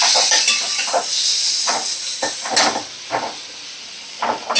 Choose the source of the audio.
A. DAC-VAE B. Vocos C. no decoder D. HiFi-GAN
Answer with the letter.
C